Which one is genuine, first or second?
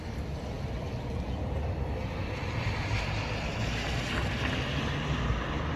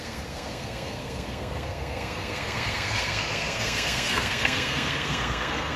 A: first